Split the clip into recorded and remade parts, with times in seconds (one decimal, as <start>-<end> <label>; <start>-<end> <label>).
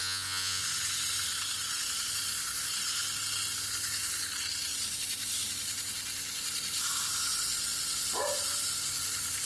0.0-0.6 remade; 0.6-9.5 recorded